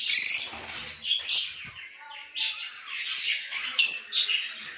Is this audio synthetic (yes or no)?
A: no